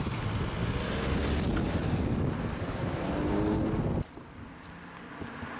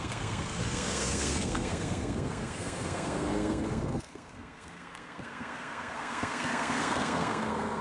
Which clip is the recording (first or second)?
first